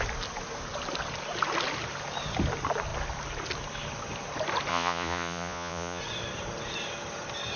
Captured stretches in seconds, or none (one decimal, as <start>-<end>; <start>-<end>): 0.0-4.7; 6.0-7.6